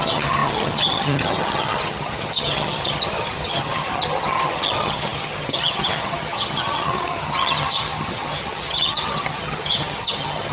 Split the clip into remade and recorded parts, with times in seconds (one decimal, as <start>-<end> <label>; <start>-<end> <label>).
0.0-10.5 remade